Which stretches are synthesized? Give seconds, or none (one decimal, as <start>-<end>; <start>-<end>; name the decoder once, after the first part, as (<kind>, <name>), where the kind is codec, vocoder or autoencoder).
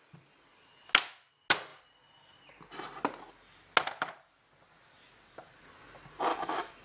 6.3-6.8 (autoencoder, DAC-VAE)